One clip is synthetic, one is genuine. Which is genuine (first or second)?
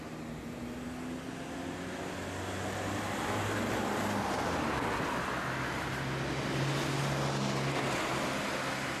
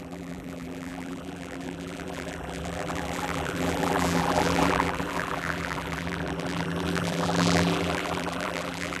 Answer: first